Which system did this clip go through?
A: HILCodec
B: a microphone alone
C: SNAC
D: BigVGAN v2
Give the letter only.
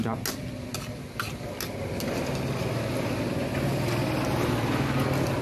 B